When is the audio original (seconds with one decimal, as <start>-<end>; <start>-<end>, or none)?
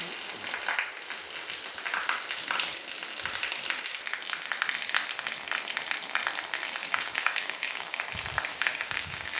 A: 0.0-6.8; 8.0-8.5